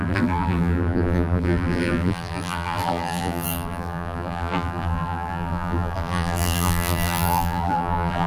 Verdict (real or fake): fake